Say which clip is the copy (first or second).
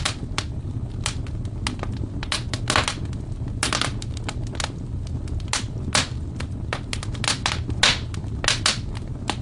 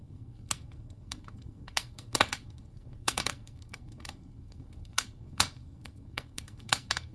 second